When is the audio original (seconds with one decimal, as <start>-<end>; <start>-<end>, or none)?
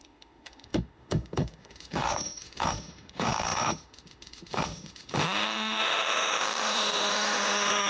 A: none